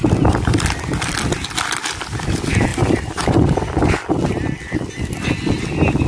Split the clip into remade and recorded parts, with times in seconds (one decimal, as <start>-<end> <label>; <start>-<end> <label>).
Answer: 0.0-6.1 recorded